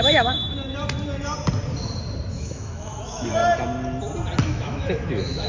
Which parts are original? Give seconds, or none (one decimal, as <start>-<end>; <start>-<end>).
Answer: 0.4-2.3; 3.4-4.4